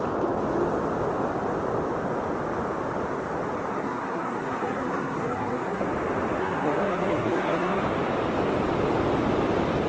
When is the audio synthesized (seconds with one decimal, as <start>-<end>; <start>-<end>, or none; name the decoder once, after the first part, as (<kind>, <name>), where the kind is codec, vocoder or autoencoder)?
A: 3.7-5.8 (codec, SNAC); 6.4-7.8

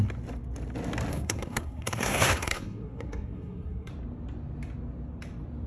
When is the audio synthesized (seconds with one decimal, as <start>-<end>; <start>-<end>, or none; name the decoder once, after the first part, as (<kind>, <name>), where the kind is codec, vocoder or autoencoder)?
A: 1.1-3.9 (codec, SNAC)

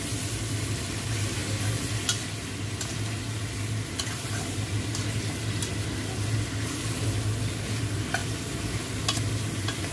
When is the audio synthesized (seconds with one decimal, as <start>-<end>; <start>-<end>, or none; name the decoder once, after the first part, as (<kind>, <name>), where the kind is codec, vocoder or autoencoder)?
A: none

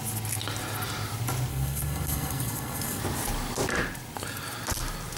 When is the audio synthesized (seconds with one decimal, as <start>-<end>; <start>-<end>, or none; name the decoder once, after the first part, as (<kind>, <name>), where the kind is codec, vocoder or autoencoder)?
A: 1.5-3.0 (codec, SNAC)